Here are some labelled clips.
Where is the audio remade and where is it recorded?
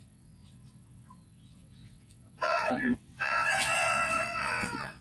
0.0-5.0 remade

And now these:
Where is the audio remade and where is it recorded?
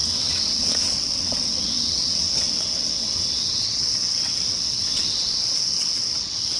0.0-6.6 remade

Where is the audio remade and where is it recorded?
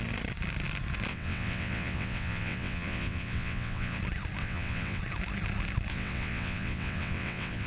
0.0-1.1 recorded; 1.1-4.0 remade; 4.0-4.4 recorded; 4.4-5.0 remade; 5.0-5.9 recorded; 5.9-7.7 remade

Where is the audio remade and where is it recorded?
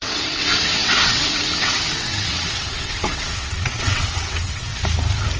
0.0-4.7 remade; 4.7-5.4 recorded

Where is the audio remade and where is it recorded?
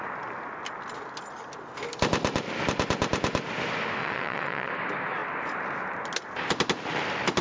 0.0-4.0 recorded; 4.0-4.7 remade; 4.7-7.4 recorded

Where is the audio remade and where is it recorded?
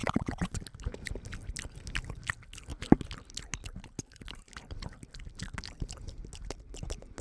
0.0-0.6 remade; 0.6-7.2 recorded